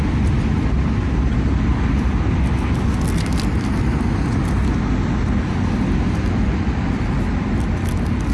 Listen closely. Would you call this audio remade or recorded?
recorded